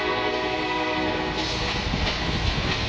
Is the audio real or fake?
fake